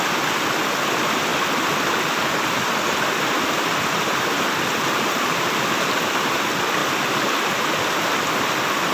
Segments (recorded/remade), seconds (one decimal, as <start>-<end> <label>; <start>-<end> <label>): 0.0-8.9 recorded